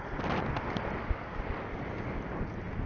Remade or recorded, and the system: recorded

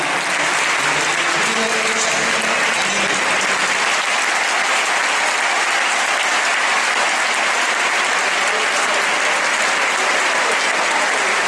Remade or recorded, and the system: recorded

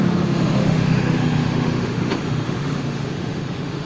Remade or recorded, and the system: remade, autoencoder, DAC-VAE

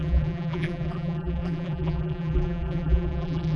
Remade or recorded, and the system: remade, vocoder, BigVGAN v2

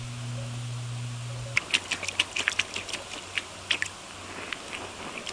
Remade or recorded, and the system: recorded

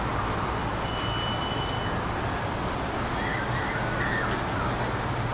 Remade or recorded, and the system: recorded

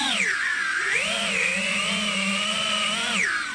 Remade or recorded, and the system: remade, vocoder, Vocos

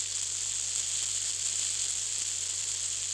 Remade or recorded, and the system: recorded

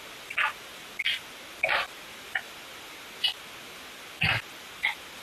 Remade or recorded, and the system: recorded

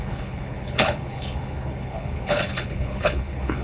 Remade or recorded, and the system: remade, codec, HILCodec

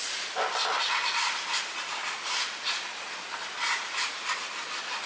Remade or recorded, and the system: recorded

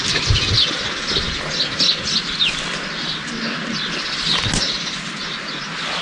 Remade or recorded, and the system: recorded